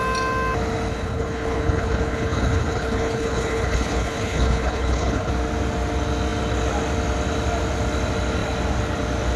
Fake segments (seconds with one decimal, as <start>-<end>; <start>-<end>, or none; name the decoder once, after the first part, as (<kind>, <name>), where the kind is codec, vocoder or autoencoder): 0.9-5.3 (codec, HILCodec)